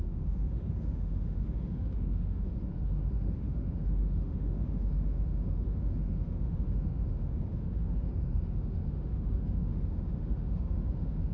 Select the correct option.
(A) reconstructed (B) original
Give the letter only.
A